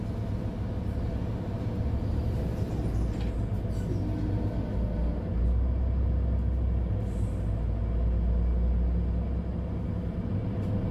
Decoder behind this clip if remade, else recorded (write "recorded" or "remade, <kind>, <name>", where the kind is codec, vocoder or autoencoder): recorded